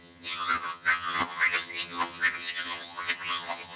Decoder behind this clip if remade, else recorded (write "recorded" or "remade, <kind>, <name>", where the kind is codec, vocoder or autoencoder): remade, vocoder, HiFi-GAN